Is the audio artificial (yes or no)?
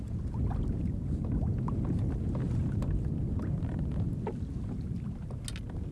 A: no